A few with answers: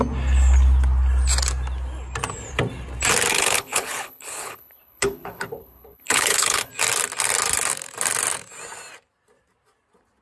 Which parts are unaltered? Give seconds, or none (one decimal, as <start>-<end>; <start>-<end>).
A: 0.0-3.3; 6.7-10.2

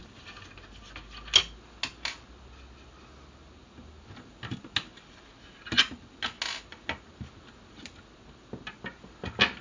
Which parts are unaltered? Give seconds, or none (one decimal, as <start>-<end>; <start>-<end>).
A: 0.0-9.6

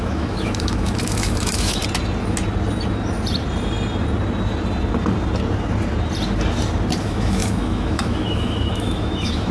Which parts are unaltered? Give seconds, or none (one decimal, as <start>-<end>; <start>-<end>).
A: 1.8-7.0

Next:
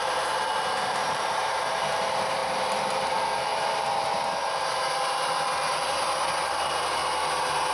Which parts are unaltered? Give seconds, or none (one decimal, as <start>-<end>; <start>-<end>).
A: 3.5-6.4; 7.0-7.7

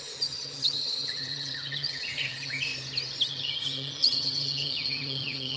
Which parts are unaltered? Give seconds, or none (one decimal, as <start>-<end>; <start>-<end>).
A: 2.7-3.3